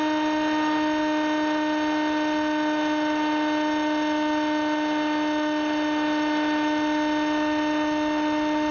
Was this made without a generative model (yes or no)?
yes